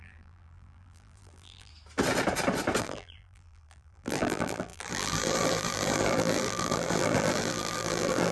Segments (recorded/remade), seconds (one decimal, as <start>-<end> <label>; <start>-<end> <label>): 0.0-1.7 remade; 1.7-2.8 recorded; 2.8-8.3 remade